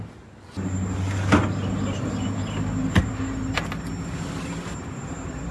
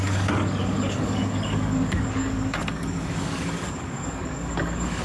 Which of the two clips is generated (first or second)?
second